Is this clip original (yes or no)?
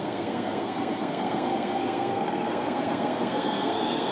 no